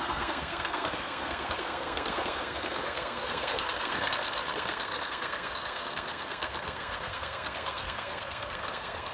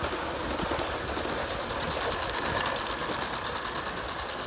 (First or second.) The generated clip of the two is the first